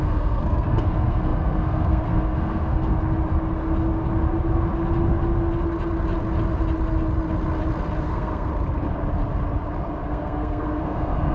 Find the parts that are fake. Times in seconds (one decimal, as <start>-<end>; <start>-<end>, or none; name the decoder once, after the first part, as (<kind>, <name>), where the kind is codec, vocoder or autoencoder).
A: 0.0-2.9 (codec, SNAC); 8.0-8.5; 10.1-11.3